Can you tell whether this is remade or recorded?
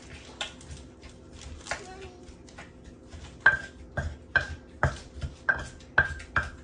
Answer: recorded